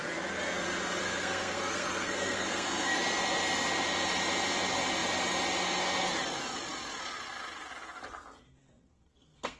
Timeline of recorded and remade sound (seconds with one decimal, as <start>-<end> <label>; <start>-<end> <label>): 0.0-1.0 recorded; 1.0-3.0 remade; 3.0-8.6 recorded; 8.6-9.6 remade